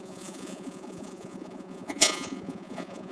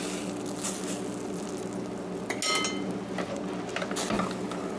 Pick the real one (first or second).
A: second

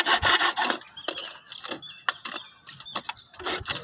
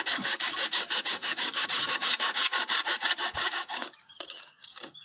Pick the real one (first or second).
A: first